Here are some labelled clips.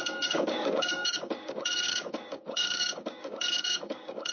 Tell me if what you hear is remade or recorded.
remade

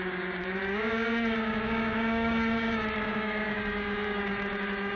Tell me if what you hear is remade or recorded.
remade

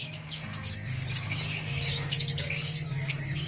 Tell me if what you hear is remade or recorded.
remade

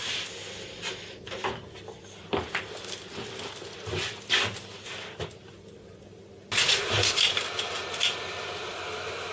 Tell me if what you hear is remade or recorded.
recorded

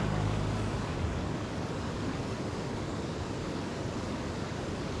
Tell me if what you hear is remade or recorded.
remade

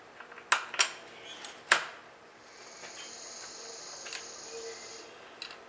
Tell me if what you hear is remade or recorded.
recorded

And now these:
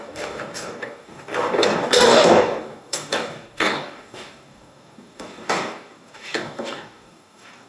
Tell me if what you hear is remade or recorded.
remade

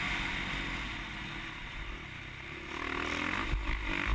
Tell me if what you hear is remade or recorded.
recorded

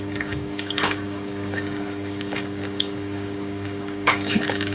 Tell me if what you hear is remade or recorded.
remade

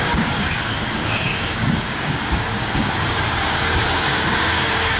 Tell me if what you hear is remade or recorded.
remade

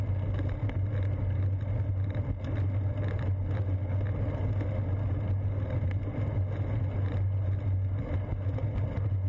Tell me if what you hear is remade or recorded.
recorded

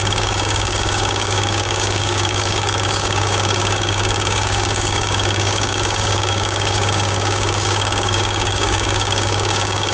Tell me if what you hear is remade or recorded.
remade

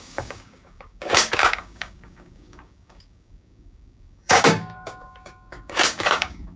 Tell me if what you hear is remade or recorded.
remade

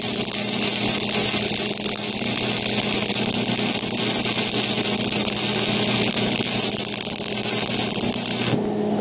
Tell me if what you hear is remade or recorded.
recorded